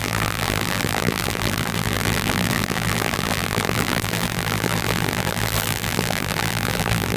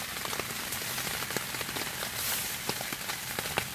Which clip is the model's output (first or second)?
first